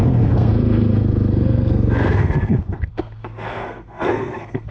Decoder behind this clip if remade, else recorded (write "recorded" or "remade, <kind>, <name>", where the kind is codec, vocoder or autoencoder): remade, codec, SNAC